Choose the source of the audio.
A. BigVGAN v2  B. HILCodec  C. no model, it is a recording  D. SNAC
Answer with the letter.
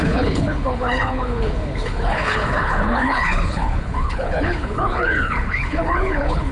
B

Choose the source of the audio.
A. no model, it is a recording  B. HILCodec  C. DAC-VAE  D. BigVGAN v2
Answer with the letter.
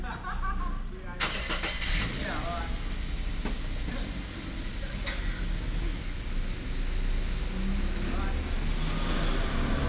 A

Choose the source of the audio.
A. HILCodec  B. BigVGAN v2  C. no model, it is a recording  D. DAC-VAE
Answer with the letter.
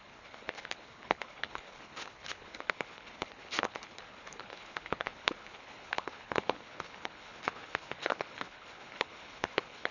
A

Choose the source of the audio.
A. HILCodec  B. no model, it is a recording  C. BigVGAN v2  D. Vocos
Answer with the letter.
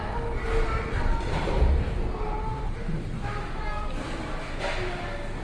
B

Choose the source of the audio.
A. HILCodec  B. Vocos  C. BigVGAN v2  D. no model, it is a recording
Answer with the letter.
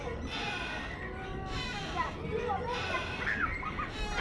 D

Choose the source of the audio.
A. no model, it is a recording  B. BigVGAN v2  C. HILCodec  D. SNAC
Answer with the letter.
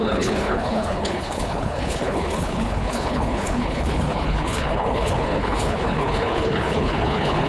C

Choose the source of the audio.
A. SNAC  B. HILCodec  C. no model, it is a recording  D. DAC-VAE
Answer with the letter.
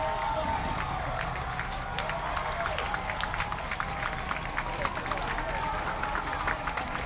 C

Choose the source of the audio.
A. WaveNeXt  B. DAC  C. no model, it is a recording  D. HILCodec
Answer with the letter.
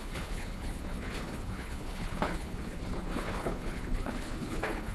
D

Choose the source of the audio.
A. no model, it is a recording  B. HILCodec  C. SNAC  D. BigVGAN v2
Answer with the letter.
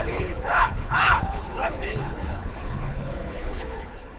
B